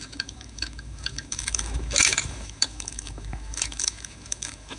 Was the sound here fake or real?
fake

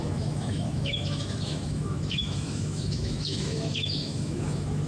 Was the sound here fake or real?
fake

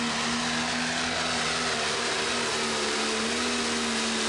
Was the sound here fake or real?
real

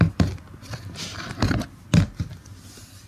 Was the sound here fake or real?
real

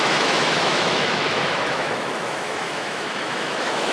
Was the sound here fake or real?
fake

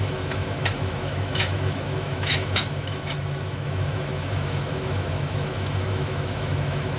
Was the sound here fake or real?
fake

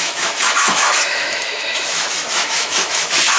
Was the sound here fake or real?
fake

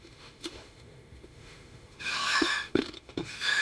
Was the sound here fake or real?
fake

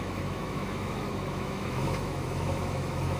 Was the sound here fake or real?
fake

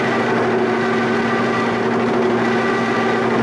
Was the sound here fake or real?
real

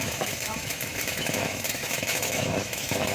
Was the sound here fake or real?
fake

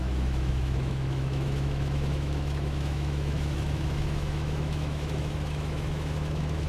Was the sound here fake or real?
fake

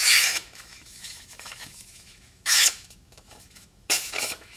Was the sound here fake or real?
fake